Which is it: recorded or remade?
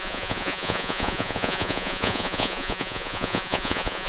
remade